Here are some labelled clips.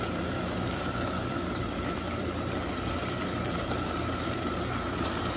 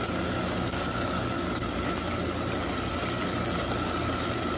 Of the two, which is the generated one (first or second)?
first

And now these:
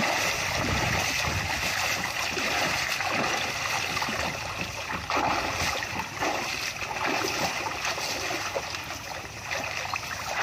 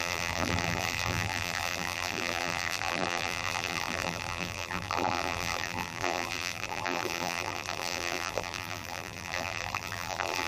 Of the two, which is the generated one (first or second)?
second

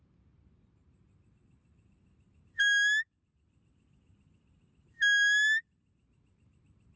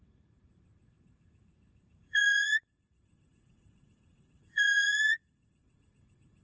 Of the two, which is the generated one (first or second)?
second